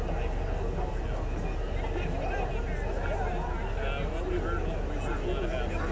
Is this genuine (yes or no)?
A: yes